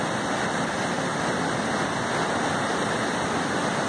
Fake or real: real